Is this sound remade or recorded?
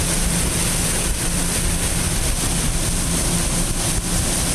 recorded